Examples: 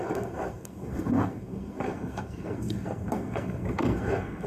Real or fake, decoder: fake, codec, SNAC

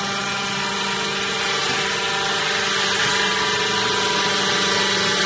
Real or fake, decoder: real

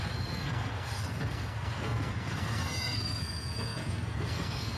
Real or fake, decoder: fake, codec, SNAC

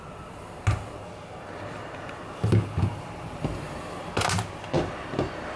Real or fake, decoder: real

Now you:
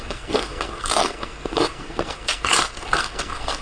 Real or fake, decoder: fake, codec, SNAC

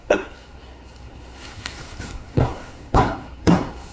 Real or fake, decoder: fake, codec, SNAC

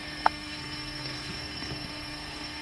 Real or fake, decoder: fake, codec, SNAC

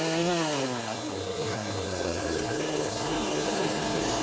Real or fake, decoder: fake, codec, SNAC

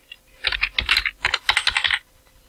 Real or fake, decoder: real